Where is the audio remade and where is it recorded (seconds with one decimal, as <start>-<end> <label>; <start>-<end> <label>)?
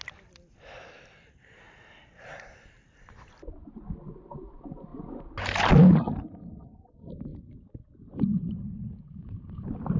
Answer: 0.0-10.0 recorded